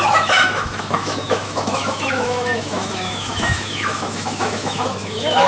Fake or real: fake